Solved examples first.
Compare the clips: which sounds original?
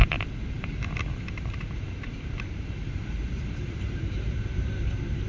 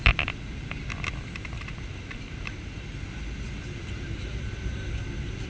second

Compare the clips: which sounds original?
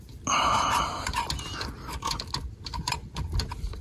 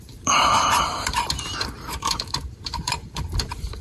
first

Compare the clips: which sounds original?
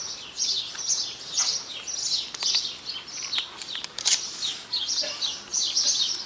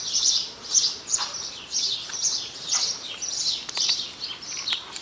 first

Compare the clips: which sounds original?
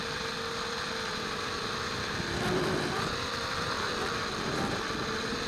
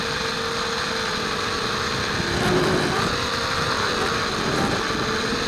second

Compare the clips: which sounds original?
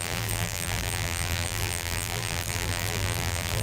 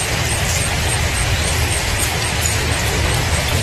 second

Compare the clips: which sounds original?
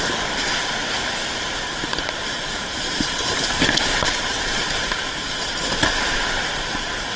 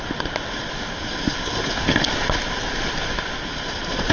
second